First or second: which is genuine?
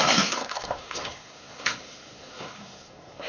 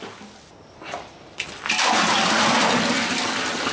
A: second